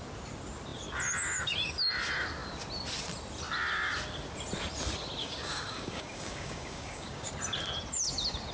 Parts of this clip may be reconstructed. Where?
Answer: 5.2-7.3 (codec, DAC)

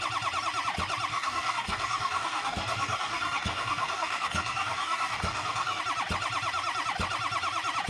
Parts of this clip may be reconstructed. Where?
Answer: 1.1-5.8 (codec, DAC)

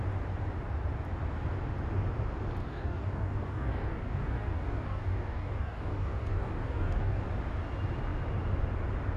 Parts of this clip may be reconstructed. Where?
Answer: 2.6-7.2 (codec, DAC)

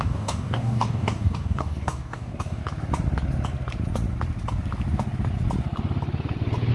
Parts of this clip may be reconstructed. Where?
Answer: 0.0-2.6 (codec, DAC)

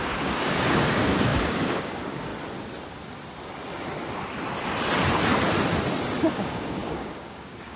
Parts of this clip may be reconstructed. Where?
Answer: 0.0-2.3 (codec, DAC); 6.2-7.8

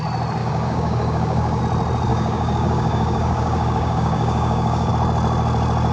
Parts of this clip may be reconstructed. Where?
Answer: 0.4-1.6 (codec, DAC); 2.1-4.9